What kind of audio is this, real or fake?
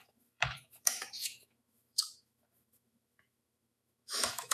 fake